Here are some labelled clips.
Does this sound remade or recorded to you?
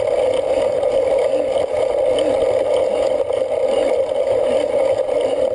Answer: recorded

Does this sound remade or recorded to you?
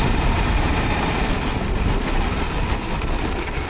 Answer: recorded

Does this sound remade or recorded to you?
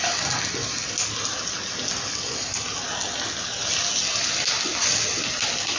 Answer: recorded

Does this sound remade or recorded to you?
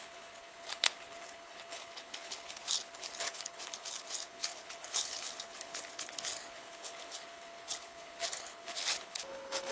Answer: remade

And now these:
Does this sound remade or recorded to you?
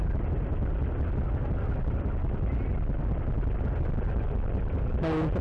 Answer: recorded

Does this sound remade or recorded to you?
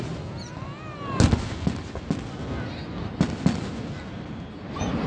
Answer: recorded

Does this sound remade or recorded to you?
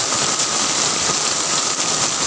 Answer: recorded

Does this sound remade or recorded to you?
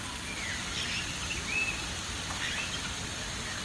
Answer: recorded